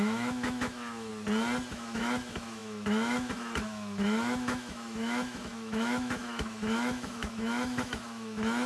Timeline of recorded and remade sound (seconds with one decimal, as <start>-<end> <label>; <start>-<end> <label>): 0.0-1.1 remade; 1.1-1.7 recorded; 1.7-8.7 remade